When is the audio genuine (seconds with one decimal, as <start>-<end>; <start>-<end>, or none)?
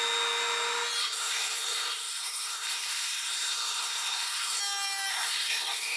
0.0-1.0; 4.6-5.1